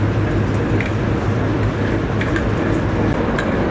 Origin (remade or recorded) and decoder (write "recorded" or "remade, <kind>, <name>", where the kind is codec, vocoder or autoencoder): recorded